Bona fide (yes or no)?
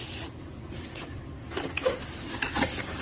yes